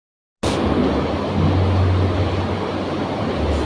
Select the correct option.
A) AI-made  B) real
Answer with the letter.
B